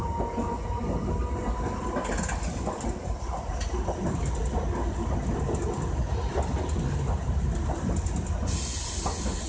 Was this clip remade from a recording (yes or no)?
no